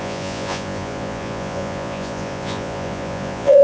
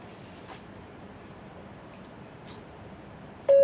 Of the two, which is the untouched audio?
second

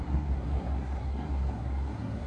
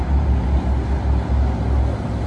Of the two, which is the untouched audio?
second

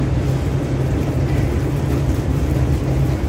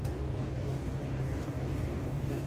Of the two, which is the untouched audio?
first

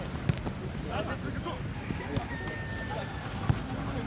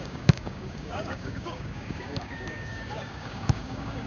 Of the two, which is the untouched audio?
first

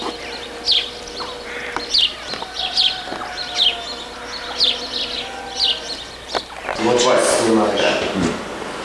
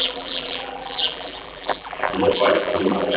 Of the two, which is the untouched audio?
first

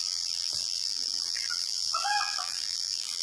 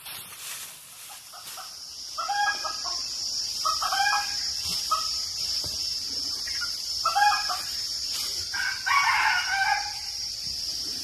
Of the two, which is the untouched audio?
second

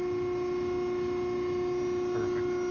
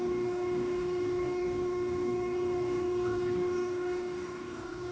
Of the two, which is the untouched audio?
first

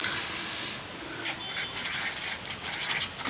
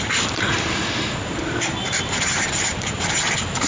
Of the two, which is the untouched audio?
first